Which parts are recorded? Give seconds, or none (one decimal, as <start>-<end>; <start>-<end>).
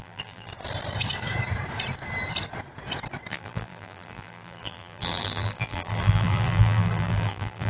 0.5-3.3